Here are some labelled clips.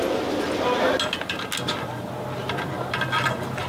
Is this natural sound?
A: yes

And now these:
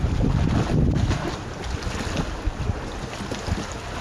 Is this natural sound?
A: yes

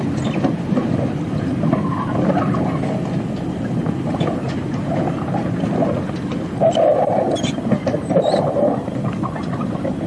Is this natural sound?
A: yes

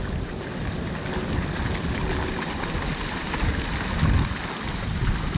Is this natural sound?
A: yes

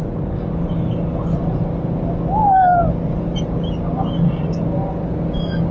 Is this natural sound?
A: yes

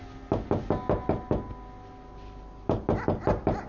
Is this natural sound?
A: yes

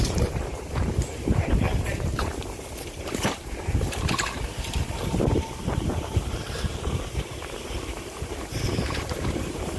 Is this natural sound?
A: no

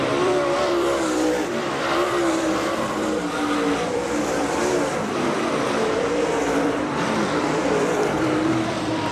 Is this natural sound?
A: no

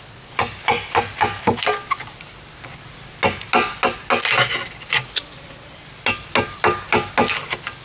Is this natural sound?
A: yes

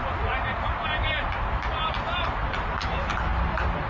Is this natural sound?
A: no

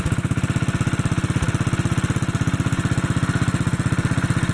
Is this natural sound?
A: yes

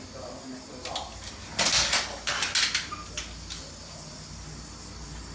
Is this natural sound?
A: yes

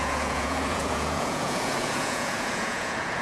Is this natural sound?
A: no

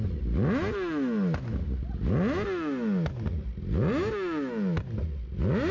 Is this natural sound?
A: yes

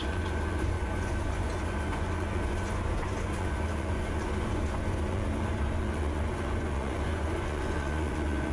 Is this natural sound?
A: no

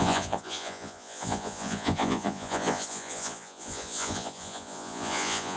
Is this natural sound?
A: no